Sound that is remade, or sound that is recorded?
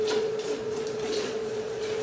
remade